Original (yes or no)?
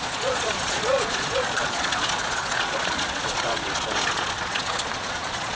no